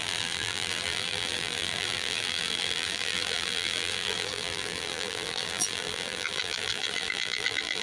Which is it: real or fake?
fake